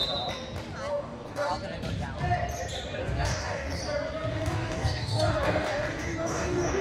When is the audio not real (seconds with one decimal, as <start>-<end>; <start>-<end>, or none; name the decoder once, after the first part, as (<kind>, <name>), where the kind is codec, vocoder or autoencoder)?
0.9-1.5 (codec, DAC); 3.0-3.8; 4.3-6.8